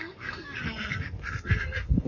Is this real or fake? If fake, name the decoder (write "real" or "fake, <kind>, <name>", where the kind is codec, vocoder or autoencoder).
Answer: fake, codec, SNAC